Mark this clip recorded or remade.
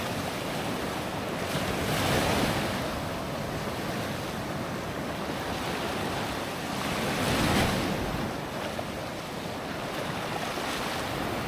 recorded